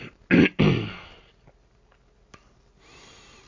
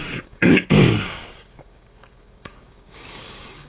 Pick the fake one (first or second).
second